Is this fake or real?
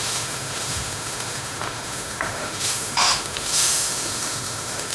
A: fake